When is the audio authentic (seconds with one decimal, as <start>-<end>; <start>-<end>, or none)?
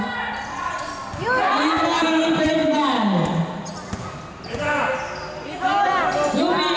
0.0-6.8